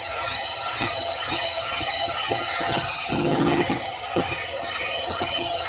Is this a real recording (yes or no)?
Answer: no